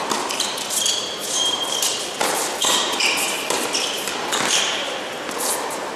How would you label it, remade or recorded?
remade